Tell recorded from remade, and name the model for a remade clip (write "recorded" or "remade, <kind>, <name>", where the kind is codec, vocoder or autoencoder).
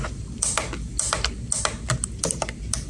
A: recorded